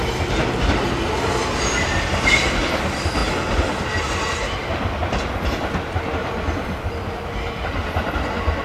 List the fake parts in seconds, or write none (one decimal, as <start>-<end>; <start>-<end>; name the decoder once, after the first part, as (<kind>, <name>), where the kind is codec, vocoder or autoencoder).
none